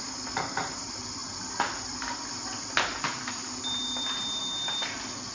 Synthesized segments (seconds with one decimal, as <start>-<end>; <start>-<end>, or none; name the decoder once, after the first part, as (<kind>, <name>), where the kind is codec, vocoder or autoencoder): none